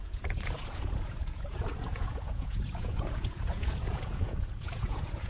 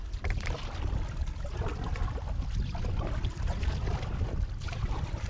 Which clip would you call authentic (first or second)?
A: second